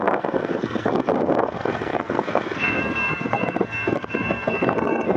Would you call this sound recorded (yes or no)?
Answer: no